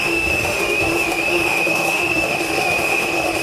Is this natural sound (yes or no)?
no